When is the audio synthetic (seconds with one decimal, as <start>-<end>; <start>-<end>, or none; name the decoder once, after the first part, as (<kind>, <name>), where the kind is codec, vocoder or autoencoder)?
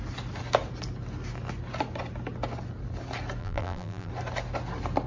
3.4-4.1 (vocoder, BigVGAN v2)